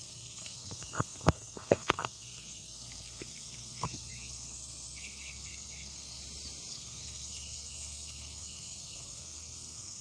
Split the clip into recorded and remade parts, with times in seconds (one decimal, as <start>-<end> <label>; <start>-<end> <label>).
0.0-6.2 remade; 6.2-6.7 recorded; 6.7-10.0 remade